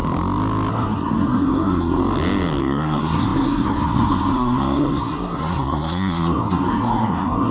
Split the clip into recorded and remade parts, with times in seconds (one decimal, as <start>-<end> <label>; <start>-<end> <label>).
0.0-0.7 recorded; 0.7-2.0 remade; 2.0-2.6 recorded; 2.6-7.5 remade